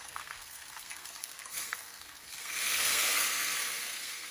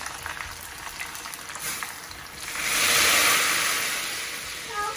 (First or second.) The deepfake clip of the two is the first